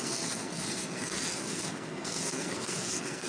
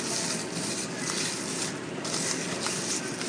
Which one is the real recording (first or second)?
second